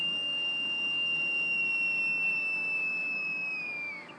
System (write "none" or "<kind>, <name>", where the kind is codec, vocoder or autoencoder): codec, DAC